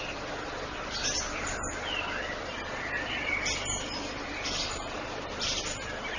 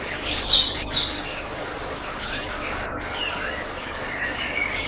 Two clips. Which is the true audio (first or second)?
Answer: first